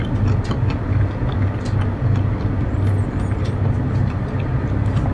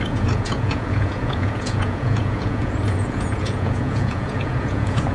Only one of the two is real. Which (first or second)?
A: first